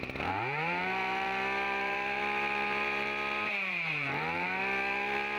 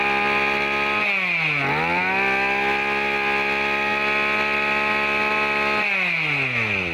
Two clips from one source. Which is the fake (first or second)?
first